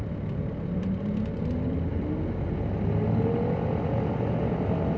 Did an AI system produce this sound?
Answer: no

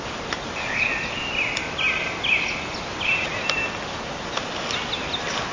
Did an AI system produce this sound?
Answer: no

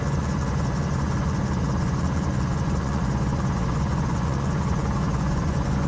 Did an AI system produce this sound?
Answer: yes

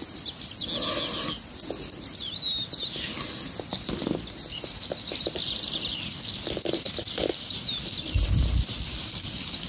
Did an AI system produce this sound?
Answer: no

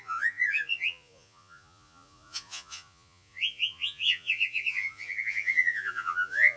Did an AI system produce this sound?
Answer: yes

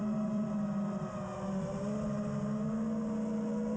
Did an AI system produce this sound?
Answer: no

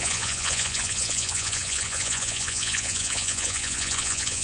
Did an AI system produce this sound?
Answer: yes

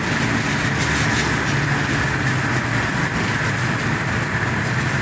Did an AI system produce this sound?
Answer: no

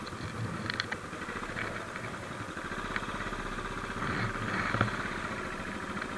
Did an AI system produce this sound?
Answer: no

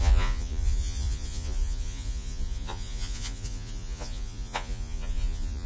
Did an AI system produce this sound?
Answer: yes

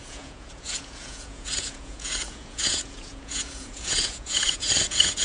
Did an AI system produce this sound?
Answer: yes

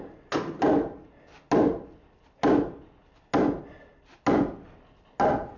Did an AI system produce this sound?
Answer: no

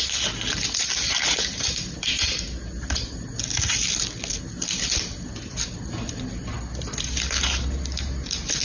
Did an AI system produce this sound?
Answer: no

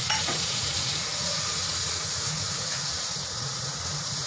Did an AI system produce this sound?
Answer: yes